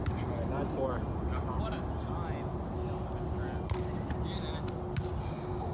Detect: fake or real real